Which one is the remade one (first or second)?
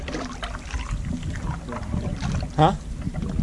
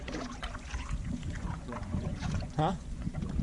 second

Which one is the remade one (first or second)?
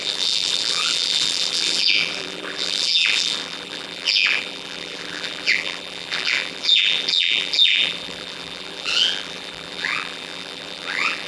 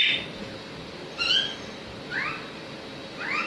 first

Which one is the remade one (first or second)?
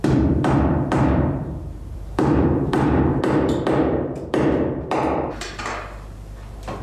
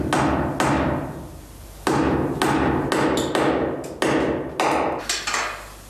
first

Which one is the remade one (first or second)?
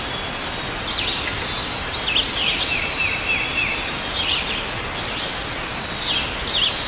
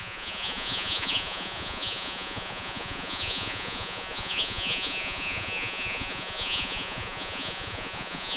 second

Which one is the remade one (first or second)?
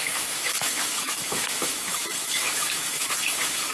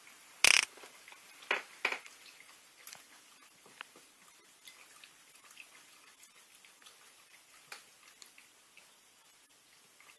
first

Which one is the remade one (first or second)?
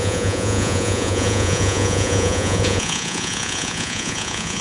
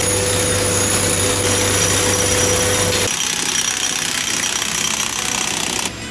first